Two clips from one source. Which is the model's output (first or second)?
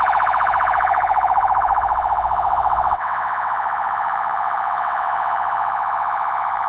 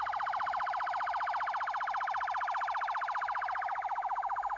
first